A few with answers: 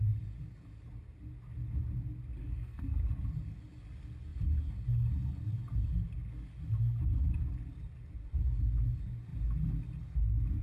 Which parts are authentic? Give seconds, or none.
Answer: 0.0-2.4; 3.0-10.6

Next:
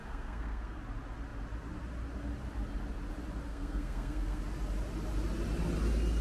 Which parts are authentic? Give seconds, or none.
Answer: 0.8-3.5; 4.4-6.2

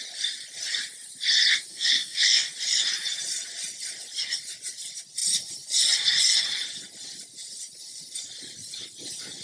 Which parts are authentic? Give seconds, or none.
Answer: 0.0-1.7; 2.5-9.4

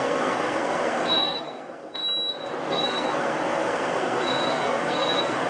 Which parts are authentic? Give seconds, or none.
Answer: 2.0-2.7